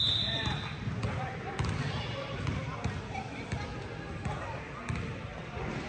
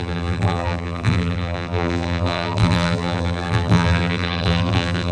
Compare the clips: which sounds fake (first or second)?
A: second